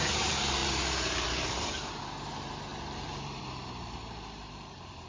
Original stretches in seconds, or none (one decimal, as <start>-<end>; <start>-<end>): none